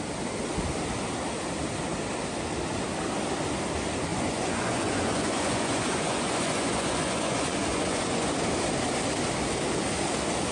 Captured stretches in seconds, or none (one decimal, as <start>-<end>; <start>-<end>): 0.0-4.1; 8.3-10.5